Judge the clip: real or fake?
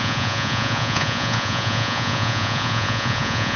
fake